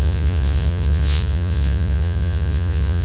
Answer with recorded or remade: remade